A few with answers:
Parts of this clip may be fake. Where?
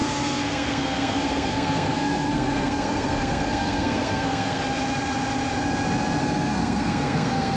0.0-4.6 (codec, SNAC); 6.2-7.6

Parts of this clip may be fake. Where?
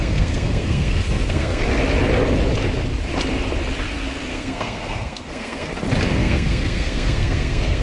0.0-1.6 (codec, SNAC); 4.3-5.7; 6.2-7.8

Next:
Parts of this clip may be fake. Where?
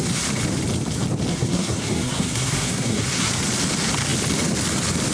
1.3-3.3 (codec, SNAC)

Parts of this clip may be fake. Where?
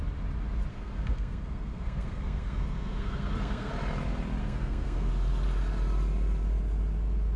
0.7-3.7 (codec, SNAC); 4.4-5.1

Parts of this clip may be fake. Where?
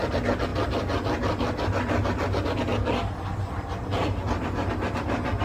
none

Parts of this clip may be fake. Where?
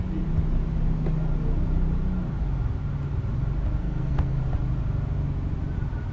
3.8-4.4 (codec, SNAC)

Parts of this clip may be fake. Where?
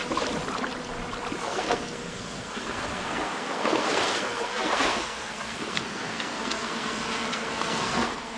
1.4-8.4 (codec, SNAC)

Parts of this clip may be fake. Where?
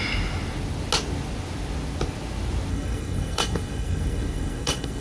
2.7-5.0 (codec, SNAC)